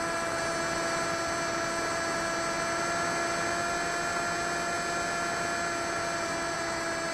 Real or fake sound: real